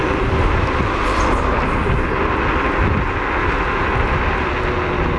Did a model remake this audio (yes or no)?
no